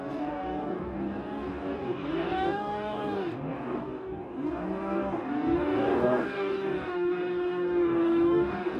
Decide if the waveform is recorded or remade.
remade